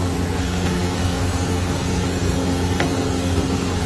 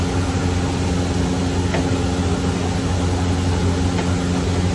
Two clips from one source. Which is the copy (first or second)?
first